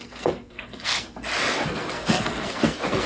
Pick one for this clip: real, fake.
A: fake